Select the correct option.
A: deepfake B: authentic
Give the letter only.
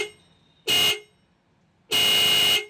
B